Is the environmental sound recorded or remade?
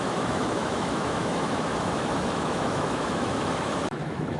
remade